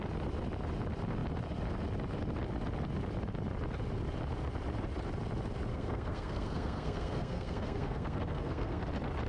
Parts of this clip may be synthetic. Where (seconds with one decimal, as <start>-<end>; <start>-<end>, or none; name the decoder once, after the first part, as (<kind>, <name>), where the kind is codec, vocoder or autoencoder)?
5.7-8.8 (codec, SNAC)